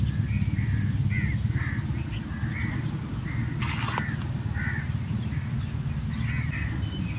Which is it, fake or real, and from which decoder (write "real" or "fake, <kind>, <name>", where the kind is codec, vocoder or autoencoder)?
real